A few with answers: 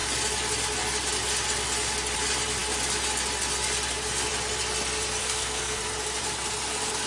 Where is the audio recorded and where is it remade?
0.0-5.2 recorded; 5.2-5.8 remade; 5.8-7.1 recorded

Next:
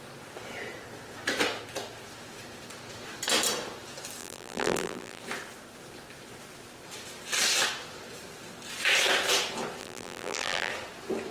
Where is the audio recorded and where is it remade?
0.0-4.2 recorded; 4.2-5.2 remade; 5.2-9.8 recorded; 9.8-10.7 remade; 10.7-11.3 recorded

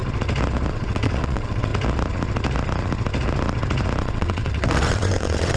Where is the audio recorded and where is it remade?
0.0-0.7 recorded; 0.7-1.7 remade; 1.7-4.0 recorded; 4.0-5.6 remade

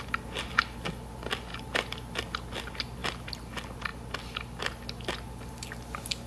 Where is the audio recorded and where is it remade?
0.0-6.3 recorded

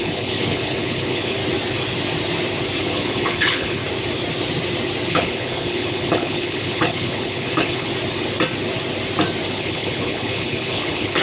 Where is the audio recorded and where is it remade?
0.0-1.4 remade; 1.4-2.8 recorded; 2.8-3.8 remade; 3.8-5.1 recorded; 5.1-7.9 remade; 7.9-9.5 recorded; 9.5-11.2 remade